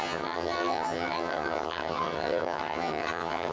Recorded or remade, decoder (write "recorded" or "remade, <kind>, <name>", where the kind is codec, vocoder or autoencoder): remade, vocoder, HiFi-GAN